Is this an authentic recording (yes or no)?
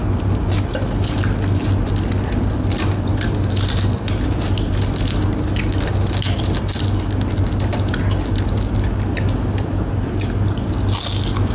yes